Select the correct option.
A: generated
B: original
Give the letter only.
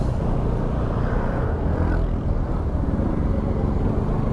B